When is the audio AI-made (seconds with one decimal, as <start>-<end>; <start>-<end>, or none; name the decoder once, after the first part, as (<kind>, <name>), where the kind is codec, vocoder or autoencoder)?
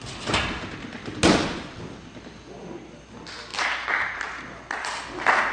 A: none